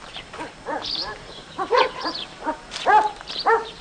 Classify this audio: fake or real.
fake